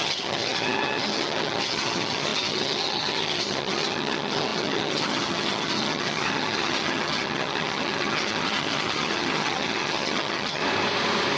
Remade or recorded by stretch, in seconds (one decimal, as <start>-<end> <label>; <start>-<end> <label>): 0.0-10.6 remade; 10.6-11.4 recorded